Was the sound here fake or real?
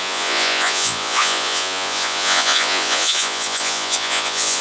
fake